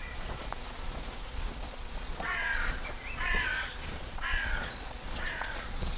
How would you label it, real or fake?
fake